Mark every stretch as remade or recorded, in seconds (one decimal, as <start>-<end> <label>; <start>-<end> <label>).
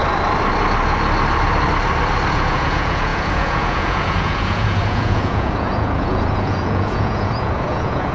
0.0-2.3 recorded; 2.3-8.1 remade